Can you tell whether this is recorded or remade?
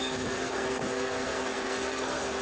remade